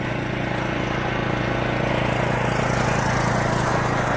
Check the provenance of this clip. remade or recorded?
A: remade